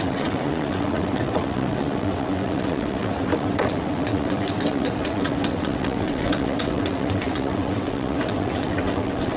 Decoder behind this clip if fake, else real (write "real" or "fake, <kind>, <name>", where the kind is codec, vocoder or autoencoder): fake, vocoder, WaveNeXt